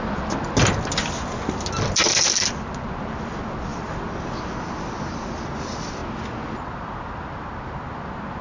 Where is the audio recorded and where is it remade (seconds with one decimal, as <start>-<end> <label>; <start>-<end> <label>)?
0.0-8.4 recorded